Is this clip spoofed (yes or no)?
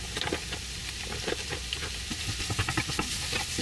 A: no